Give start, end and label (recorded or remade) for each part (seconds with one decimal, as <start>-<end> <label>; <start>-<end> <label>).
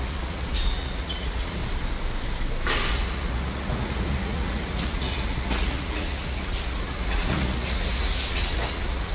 0.0-1.6 remade; 1.6-2.9 recorded; 2.9-9.1 remade